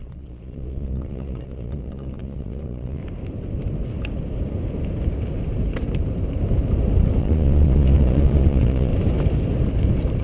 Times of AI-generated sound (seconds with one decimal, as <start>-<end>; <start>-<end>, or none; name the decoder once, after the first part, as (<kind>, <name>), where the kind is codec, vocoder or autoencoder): 0.0-3.0 (vocoder, Vocos); 7.2-8.9